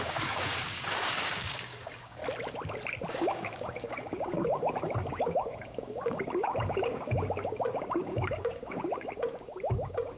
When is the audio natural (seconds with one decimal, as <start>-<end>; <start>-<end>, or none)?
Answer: 2.2-3.1